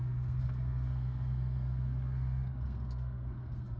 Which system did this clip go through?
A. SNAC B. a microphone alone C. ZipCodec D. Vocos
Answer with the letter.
A